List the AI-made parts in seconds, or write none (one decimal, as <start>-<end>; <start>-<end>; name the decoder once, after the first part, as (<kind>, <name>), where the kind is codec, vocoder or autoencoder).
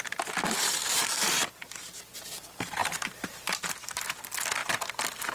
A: 2.8-3.7 (vocoder, BigVGAN v2)